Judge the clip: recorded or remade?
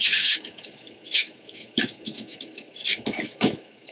remade